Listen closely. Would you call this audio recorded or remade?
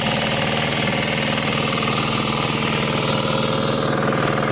recorded